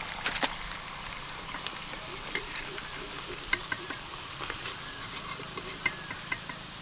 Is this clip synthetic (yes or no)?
yes